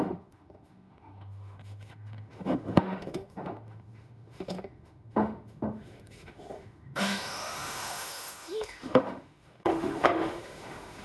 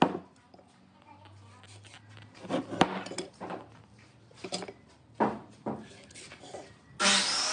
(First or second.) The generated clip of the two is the first